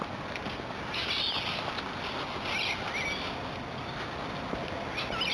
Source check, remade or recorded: recorded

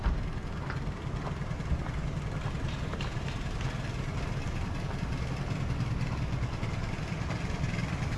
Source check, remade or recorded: recorded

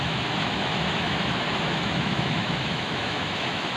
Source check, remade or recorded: remade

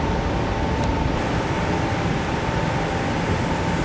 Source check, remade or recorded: recorded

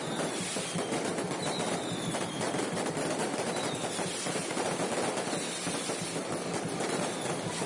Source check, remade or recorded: remade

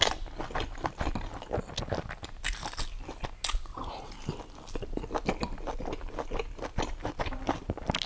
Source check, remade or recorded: recorded